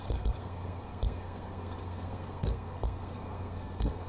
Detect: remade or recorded remade